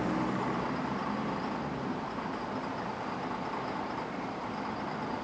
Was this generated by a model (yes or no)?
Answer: no